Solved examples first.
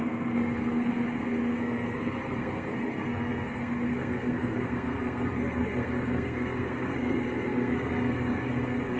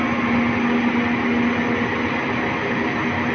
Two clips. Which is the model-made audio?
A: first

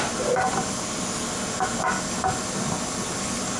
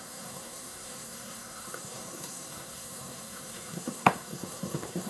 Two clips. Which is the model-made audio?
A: second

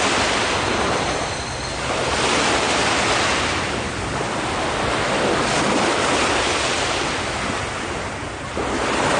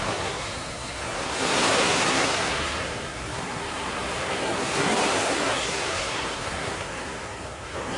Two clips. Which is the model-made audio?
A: second